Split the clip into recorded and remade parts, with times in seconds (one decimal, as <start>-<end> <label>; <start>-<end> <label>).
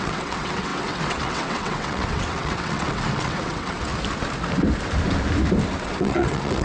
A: 0.0-3.9 remade; 3.9-5.8 recorded; 5.8-6.6 remade